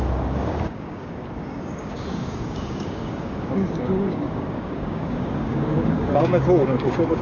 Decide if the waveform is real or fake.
fake